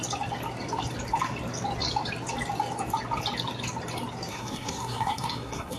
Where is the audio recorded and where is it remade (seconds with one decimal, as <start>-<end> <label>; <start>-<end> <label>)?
0.0-4.3 recorded; 4.3-5.8 remade